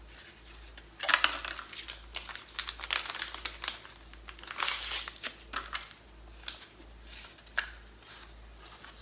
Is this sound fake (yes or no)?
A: no